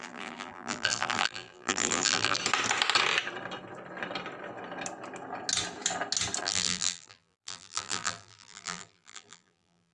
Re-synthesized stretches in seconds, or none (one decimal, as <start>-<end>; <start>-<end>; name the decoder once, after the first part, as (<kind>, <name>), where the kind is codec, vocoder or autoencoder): 0.0-2.4 (vocoder, BigVGAN v2); 6.4-9.9